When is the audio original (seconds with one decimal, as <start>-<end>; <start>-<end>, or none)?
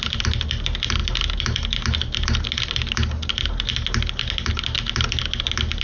0.0-5.8